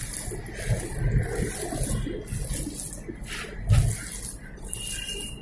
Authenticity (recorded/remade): recorded